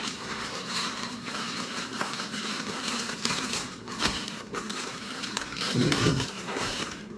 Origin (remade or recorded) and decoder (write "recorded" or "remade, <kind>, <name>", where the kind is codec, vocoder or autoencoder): remade, codec, SNAC